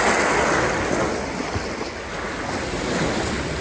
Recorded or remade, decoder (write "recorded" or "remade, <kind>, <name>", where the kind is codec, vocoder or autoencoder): recorded